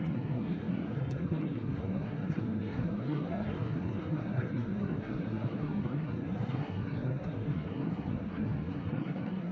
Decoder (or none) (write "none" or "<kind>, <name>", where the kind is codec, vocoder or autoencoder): codec, SNAC